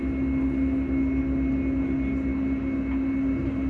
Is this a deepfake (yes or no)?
no